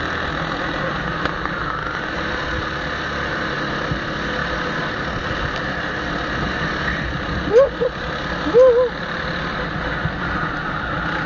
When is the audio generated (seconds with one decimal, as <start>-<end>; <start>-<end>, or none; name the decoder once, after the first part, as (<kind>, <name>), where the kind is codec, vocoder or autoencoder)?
none